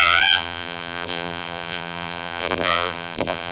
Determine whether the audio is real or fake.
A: fake